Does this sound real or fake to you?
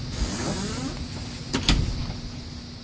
real